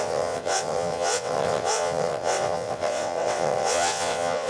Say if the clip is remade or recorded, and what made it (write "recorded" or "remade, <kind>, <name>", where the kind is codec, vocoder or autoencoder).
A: remade, vocoder, WaveNeXt